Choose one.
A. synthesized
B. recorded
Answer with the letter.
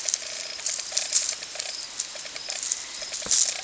B